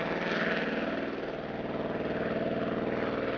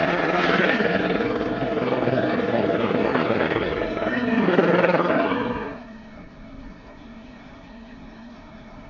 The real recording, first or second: first